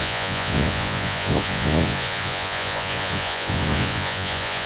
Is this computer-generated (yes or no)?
yes